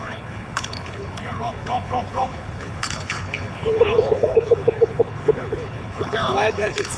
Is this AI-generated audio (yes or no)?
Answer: yes